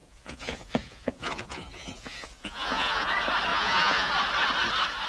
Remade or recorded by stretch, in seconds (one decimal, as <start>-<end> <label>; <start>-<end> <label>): 0.0-3.1 remade; 3.1-3.5 recorded; 3.5-4.1 remade; 4.1-5.1 recorded